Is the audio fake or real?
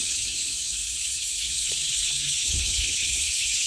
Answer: fake